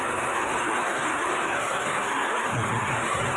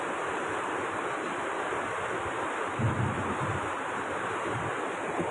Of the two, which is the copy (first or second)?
first